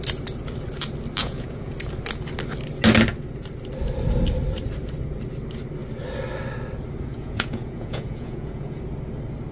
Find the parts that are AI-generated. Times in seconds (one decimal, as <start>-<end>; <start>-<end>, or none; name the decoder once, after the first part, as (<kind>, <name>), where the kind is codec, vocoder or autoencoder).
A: 1.2-1.7 (vocoder, Vocos); 7.1-8.8